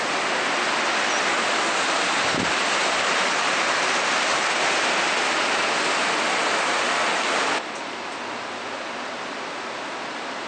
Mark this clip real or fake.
real